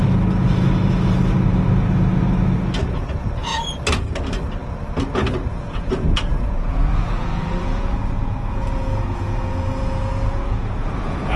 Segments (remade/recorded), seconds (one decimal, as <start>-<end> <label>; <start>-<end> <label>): 0.0-2.8 recorded; 2.8-3.5 remade; 3.5-5.5 recorded; 5.5-11.4 remade